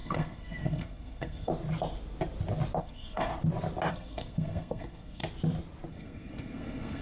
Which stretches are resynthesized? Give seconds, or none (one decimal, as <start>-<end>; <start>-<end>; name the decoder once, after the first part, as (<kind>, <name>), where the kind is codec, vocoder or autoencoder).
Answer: 0.0-1.5 (codec, SNAC); 2.8-3.3; 3.9-5.2; 5.9-7.0